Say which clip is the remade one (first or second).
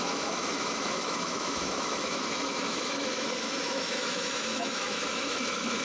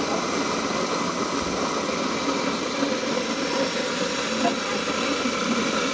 first